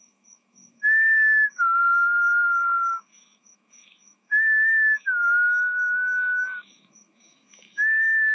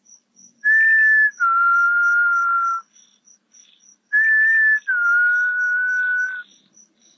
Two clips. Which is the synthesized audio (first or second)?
first